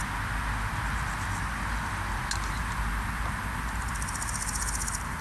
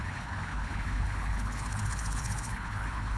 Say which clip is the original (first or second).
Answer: first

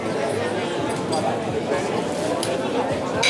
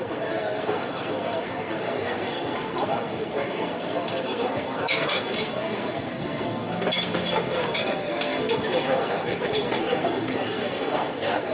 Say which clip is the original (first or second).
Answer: first